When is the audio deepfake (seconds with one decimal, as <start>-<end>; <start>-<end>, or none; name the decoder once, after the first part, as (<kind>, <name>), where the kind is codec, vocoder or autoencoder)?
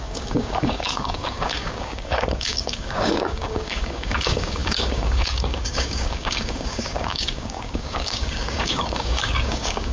0.0-9.9 (codec, DAC)